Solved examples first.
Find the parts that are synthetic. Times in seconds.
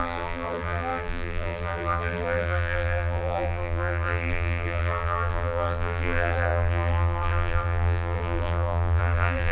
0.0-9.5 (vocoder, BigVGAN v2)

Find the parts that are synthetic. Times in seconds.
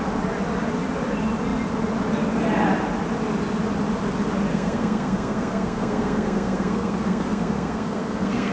4.5-8.5 (codec, SNAC)